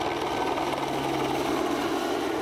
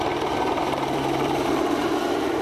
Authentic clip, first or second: first